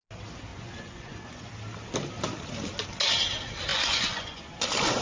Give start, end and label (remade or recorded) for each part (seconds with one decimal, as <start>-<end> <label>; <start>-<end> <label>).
0.0-0.5 recorded; 0.5-1.5 remade; 1.5-3.7 recorded; 3.7-4.4 remade; 4.4-5.0 recorded